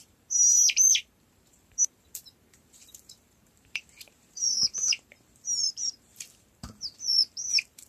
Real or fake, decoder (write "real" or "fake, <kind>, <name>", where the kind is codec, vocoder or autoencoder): fake, vocoder, BigVGAN v2